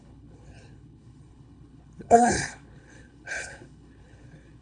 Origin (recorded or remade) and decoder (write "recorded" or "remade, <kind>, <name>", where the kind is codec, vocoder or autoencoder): remade, codec, HILCodec